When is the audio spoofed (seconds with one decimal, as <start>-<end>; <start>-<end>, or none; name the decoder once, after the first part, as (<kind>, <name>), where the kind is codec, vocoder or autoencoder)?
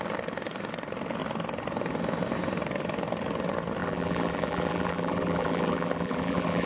3.8-6.7 (vocoder, BigVGAN v2)